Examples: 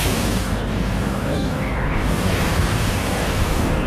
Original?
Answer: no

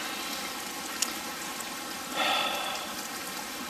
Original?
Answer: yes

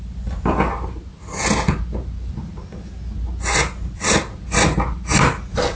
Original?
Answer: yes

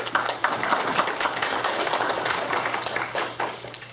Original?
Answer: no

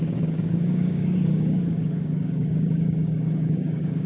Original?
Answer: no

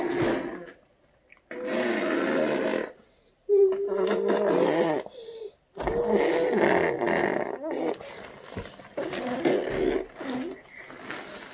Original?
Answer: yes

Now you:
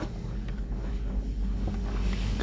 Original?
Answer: no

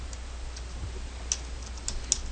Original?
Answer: yes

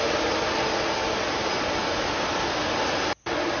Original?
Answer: yes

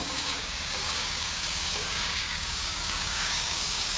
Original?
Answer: no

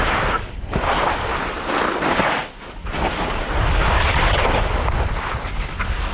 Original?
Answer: yes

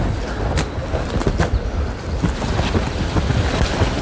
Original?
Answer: yes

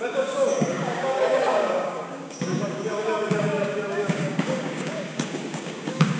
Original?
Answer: no